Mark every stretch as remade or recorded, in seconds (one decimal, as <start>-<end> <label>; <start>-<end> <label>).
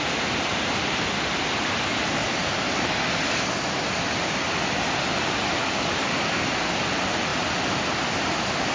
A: 0.0-5.6 recorded; 5.6-6.5 remade; 6.5-8.7 recorded